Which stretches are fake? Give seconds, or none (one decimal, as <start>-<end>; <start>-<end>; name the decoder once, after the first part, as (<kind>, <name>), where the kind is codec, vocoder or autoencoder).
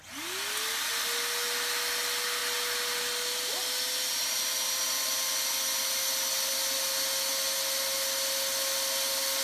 none